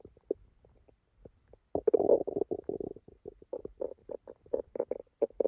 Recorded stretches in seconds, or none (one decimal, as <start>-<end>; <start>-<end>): 0.0-5.5